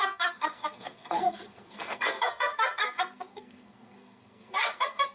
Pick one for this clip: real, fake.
fake